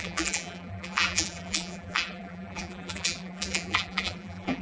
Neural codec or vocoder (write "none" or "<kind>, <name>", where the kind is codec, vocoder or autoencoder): vocoder, BigVGAN v2